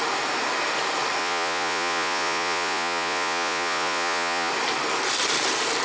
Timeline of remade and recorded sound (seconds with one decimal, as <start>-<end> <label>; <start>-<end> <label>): 0.0-1.2 recorded; 1.2-4.5 remade; 4.5-5.8 recorded